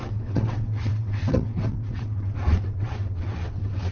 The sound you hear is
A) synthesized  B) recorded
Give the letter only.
A